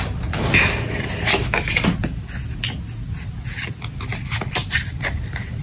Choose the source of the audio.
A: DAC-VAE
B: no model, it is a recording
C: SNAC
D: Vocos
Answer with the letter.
B